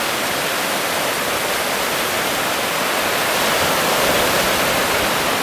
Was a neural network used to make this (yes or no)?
no